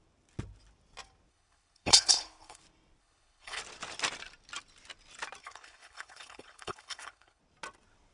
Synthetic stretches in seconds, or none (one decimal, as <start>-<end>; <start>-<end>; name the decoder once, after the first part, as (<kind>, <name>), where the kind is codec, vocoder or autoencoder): 1.3-2.6 (codec, HILCodec); 3.0-3.6; 5.4-7.4